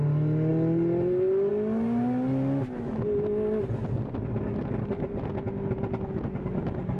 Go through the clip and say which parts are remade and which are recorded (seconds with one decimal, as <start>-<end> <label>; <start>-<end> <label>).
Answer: 0.0-7.0 recorded